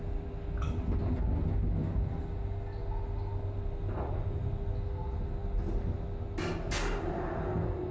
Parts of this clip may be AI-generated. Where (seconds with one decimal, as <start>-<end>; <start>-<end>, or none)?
none